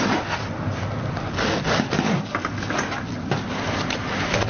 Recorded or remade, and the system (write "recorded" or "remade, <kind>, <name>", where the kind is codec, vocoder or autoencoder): recorded